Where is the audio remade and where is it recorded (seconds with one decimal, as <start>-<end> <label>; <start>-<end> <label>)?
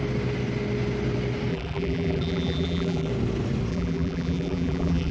0.0-1.5 recorded; 1.5-3.1 remade; 3.1-3.7 recorded; 3.7-5.1 remade